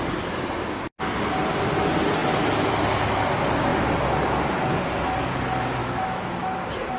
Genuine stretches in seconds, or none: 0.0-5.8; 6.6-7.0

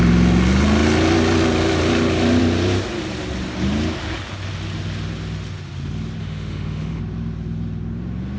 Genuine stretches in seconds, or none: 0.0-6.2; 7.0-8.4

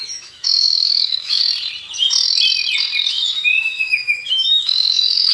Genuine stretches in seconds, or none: 1.4-3.1

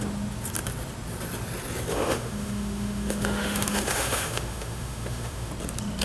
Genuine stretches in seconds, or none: 0.0-1.9; 5.5-6.0

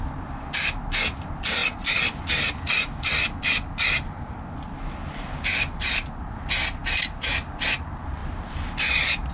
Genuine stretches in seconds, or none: 0.0-9.3

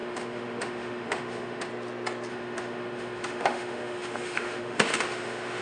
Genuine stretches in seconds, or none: 1.7-2.3